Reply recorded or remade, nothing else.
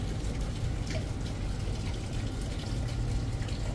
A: recorded